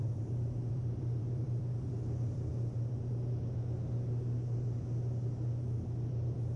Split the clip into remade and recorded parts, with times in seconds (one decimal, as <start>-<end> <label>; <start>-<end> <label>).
0.0-2.5 remade; 2.5-6.6 recorded